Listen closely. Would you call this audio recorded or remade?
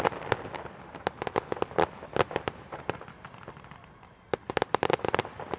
recorded